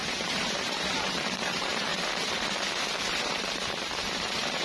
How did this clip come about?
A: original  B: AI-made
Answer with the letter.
B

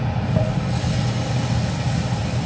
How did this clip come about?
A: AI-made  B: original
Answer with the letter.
A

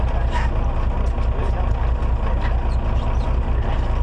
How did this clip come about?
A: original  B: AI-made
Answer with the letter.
A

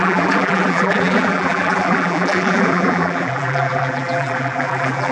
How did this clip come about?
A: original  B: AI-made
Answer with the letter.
B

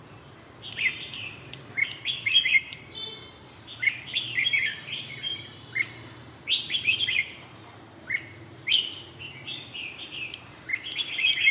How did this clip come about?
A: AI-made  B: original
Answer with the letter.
A